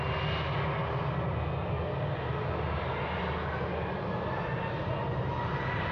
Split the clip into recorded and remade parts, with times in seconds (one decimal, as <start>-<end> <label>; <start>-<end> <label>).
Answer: 0.0-5.9 recorded